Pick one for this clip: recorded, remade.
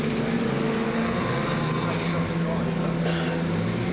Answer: recorded